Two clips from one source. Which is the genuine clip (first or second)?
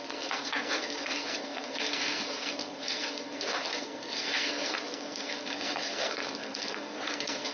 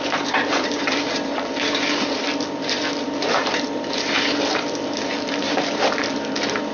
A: second